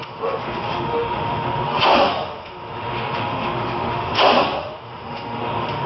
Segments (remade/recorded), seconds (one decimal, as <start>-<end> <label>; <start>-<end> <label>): 0.0-5.9 remade